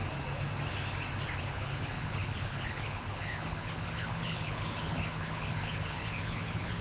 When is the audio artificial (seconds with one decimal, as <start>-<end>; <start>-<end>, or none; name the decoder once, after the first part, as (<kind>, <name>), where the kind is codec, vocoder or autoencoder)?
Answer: 1.4-6.8 (codec, HILCodec)